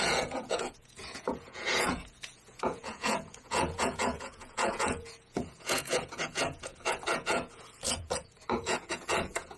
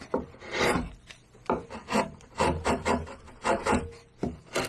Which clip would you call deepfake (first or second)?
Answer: first